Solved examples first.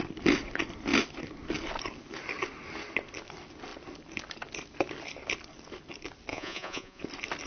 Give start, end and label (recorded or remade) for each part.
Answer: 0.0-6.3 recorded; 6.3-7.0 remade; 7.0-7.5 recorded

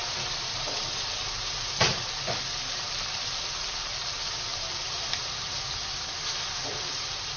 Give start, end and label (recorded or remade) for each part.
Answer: 0.0-2.4 remade; 2.4-4.5 recorded; 4.5-6.1 remade; 6.1-7.4 recorded

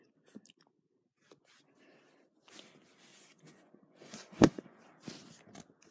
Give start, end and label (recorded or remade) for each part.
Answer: 0.0-3.1 recorded; 3.1-4.8 remade; 4.8-5.9 recorded

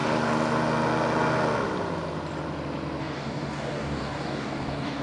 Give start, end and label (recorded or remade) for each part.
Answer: 0.0-3.0 recorded; 3.0-5.0 remade